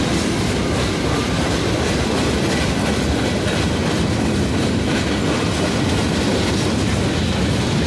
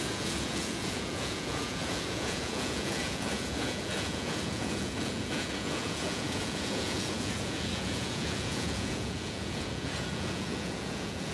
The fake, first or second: second